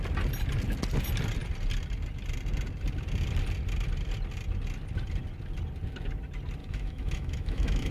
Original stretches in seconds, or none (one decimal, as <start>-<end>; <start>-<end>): 0.0-6.6